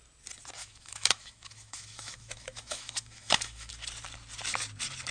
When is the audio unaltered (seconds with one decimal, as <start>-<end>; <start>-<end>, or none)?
0.0-0.6; 3.7-5.1